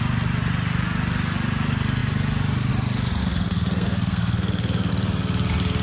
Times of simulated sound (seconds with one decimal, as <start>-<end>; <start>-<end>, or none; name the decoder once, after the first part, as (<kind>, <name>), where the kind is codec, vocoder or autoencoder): 3.2-4.9 (codec, SNAC)